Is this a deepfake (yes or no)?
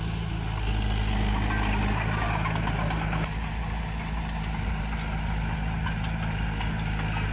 no